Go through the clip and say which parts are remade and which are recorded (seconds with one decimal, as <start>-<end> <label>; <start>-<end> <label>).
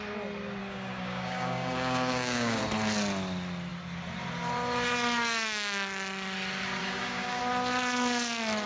0.0-0.6 recorded; 0.6-2.6 remade; 2.6-6.8 recorded; 6.8-7.4 remade; 7.4-8.7 recorded